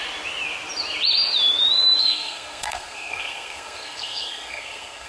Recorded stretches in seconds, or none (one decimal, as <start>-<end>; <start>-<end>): 0.0-2.0